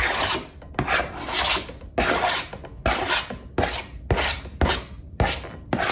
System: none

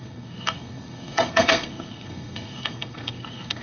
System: codec, SNAC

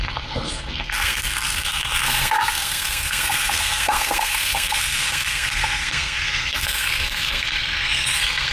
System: codec, SNAC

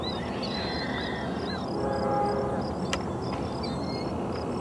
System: none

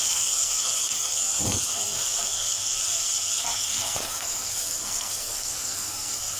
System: codec, SNAC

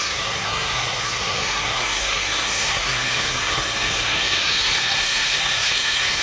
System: codec, SNAC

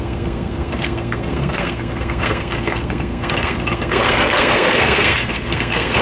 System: codec, SNAC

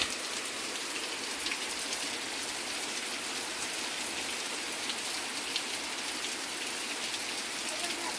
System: none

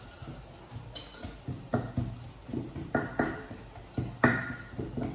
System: none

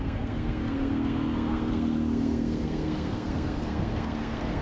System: codec, SNAC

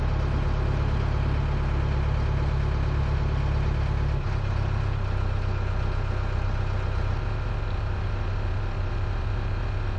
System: none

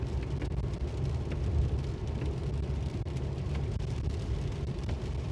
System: none